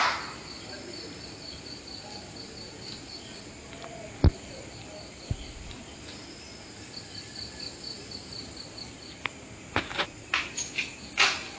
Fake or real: real